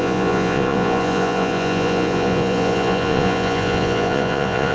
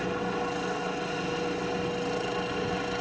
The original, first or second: second